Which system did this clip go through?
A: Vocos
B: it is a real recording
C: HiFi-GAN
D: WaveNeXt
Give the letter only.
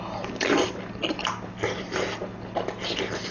B